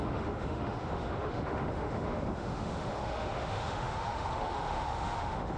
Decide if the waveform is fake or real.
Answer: fake